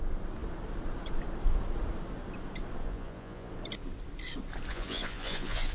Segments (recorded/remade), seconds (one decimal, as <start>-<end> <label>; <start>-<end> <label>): 0.0-2.8 recorded; 2.8-3.5 remade; 3.5-4.7 recorded; 4.7-5.7 remade